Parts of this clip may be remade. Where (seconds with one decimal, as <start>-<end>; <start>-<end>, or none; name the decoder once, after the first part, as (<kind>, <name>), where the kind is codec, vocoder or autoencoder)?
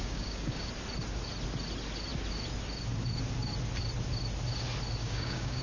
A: 0.0-0.7 (codec, DAC); 5.0-5.6